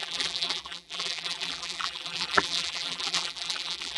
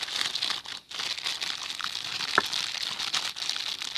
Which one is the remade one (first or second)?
first